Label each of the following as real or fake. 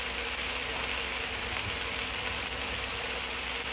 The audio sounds real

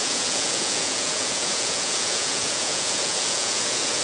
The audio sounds fake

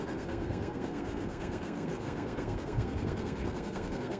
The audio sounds fake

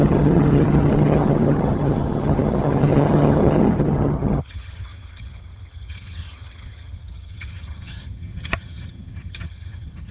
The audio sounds fake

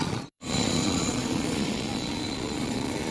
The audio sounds fake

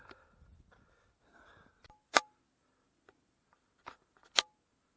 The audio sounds real